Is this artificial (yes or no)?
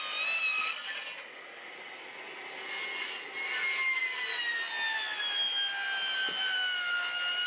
no